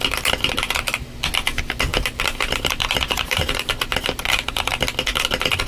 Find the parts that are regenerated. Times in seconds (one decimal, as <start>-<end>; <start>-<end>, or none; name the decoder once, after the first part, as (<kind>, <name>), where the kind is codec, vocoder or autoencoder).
1.9-4.8 (vocoder, BigVGAN v2)